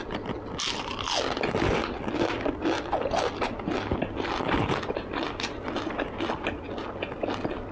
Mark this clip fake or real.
real